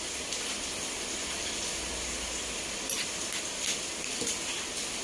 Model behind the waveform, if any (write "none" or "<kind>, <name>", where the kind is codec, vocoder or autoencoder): none